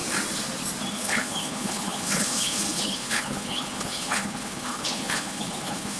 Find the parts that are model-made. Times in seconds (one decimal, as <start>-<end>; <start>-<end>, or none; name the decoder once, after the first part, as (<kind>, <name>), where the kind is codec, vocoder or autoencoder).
0.9-6.0 (codec, HILCodec)